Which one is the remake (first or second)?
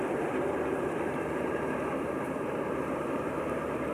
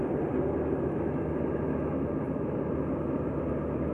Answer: first